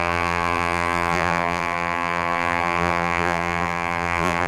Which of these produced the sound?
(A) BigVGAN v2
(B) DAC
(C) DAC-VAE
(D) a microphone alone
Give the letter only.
A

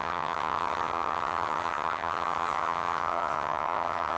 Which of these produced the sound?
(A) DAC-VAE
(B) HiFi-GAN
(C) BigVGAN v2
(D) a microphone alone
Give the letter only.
B